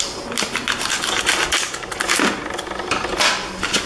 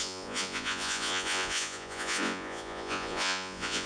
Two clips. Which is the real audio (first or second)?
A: first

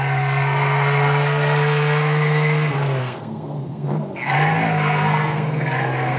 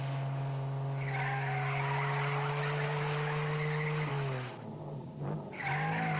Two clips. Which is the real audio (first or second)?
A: second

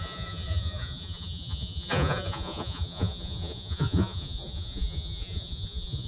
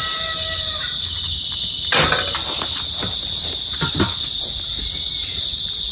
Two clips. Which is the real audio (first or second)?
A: second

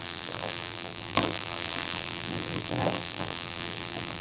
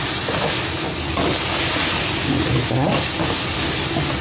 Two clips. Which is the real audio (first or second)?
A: second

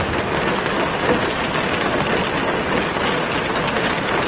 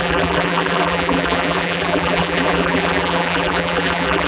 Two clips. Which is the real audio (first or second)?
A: first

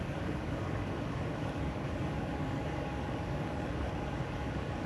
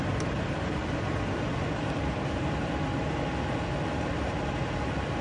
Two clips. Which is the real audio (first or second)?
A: second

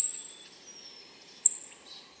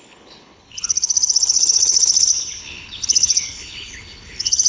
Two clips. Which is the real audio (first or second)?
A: first